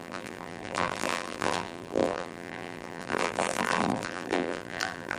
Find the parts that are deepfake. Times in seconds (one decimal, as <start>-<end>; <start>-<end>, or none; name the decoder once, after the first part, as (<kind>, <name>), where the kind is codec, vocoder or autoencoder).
0.0-5.2 (vocoder, BigVGAN v2)